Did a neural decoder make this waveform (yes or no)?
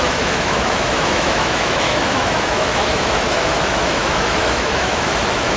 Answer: yes